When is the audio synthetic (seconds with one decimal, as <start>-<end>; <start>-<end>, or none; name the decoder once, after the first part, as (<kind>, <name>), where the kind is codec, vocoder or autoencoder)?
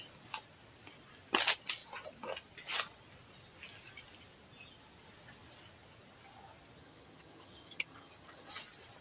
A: 6.8-8.5 (vocoder, HiFi-GAN)